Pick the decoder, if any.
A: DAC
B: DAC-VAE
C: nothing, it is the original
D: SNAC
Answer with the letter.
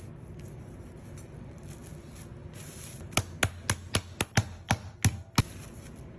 C